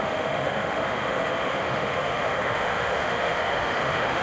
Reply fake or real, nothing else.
fake